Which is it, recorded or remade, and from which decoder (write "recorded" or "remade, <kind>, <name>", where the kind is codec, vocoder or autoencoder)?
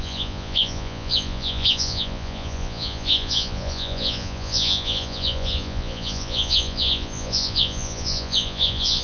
remade, vocoder, Vocos